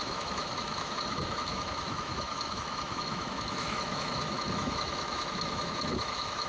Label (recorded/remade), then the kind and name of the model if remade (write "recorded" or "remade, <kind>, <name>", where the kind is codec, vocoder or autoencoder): remade, autoencoder, DAC-VAE